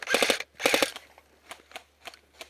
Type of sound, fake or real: real